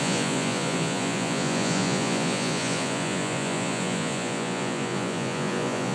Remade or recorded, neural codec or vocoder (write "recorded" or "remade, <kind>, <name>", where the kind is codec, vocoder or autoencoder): remade, vocoder, Vocos